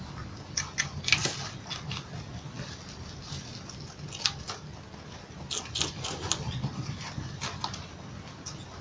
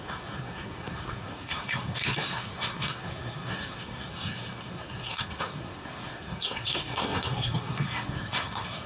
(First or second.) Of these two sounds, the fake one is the second